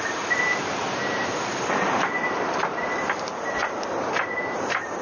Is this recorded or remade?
remade